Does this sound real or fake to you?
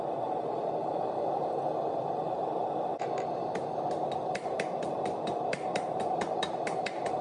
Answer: real